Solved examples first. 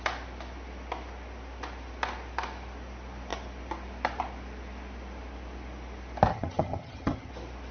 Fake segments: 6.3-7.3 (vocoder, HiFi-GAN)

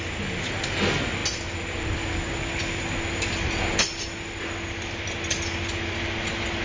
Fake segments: none

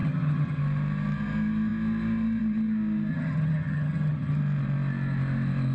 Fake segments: 0.0-0.6 (vocoder, HiFi-GAN); 3.1-4.4

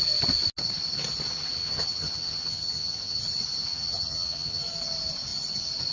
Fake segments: 1.6-3.2 (vocoder, HiFi-GAN); 3.7-4.6